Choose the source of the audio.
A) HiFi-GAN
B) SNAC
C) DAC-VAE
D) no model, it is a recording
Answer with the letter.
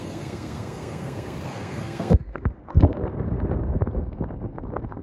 B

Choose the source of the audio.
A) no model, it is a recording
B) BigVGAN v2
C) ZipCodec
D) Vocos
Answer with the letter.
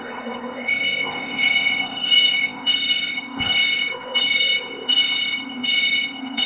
C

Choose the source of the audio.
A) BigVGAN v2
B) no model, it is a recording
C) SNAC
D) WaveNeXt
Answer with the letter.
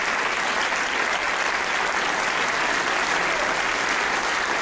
B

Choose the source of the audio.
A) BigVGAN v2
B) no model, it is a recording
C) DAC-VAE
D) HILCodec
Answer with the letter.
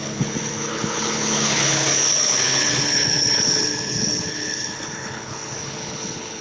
D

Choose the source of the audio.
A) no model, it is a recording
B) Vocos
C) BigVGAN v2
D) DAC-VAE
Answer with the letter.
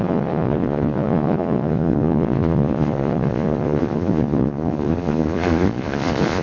B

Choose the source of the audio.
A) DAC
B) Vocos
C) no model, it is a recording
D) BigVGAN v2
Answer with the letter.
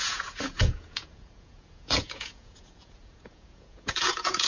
B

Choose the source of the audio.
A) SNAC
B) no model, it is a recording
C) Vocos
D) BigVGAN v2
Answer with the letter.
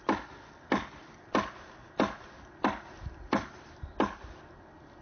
B